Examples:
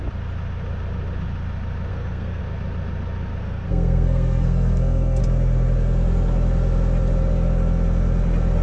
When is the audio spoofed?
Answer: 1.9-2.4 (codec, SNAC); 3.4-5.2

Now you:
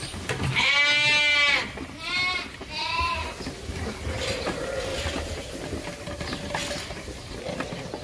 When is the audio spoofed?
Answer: 4.9-5.5 (vocoder, BigVGAN v2)

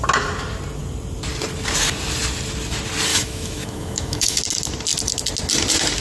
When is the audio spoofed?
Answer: 3.1-4.4 (autoencoder, DAC-VAE)

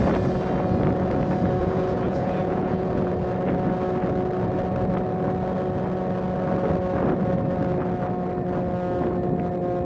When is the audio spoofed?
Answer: 1.6-3.0 (vocoder, Vocos)

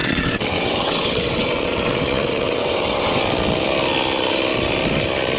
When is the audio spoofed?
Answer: 0.0-3.2 (vocoder, WaveNeXt)

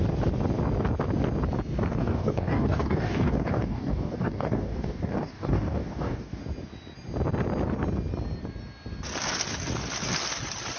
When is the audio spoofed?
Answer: 1.9-6.4 (codec, DAC)

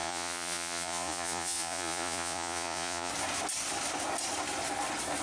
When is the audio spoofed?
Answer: 0.0-3.1 (vocoder, Vocos)